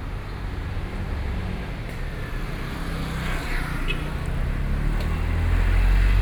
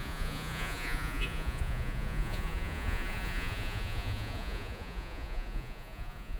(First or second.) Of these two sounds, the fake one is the second